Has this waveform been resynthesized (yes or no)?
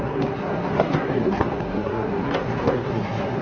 yes